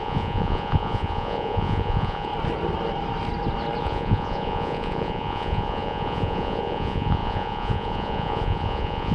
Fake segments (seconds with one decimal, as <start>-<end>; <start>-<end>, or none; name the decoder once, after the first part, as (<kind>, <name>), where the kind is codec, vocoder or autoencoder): 0.0-2.3 (vocoder, Vocos); 3.8-9.1